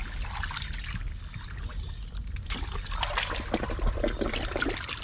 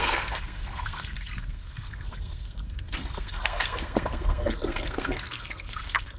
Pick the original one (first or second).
first